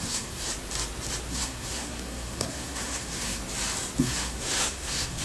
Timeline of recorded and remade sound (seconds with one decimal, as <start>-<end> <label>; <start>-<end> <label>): 0.0-0.5 remade; 0.5-1.3 recorded; 1.3-3.4 remade; 3.4-4.0 recorded; 4.0-5.2 remade